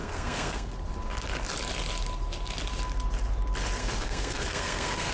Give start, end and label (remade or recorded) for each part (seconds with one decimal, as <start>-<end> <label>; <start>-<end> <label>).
0.0-0.7 remade; 0.7-3.8 recorded; 3.8-5.1 remade